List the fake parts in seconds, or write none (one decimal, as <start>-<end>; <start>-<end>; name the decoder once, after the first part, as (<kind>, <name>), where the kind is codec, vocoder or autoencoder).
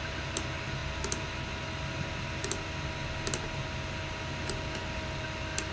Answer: none